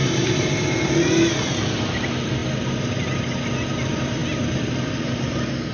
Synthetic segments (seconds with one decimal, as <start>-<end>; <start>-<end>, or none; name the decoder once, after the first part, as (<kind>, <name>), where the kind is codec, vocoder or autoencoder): 0.0-0.8 (vocoder, BigVGAN v2)